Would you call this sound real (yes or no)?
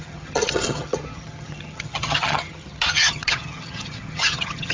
no